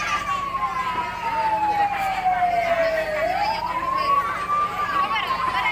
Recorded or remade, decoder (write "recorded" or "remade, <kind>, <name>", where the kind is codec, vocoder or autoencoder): recorded